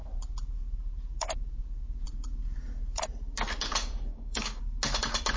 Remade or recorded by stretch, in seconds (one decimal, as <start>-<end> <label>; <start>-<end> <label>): 0.0-4.1 recorded; 4.1-4.6 remade; 4.6-5.4 recorded